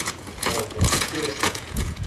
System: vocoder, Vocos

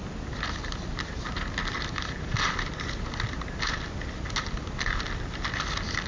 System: none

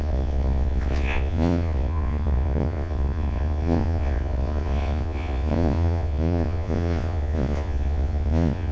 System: vocoder, Vocos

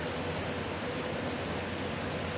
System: none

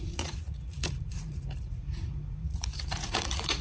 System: vocoder, Vocos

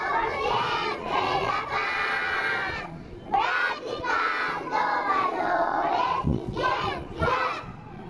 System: vocoder, Vocos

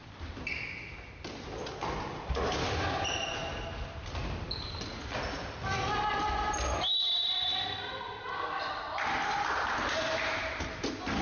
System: none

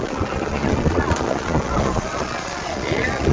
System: vocoder, Vocos